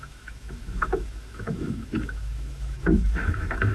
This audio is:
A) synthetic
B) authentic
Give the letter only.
A